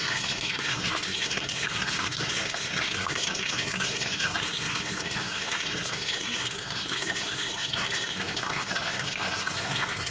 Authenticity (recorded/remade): remade